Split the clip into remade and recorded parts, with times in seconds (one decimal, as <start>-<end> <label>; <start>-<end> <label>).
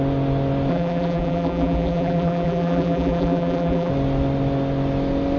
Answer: 0.0-0.7 recorded; 0.7-3.9 remade; 3.9-5.4 recorded